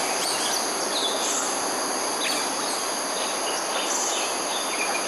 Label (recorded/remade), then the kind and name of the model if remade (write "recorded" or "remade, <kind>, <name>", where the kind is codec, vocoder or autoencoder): recorded